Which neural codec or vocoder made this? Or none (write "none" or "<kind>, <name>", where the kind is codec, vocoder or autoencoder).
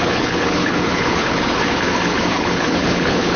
codec, HILCodec